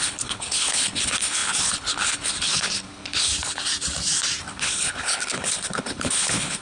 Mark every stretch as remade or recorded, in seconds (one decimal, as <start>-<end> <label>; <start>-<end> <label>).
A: 0.0-3.3 remade; 3.3-4.4 recorded; 4.4-6.6 remade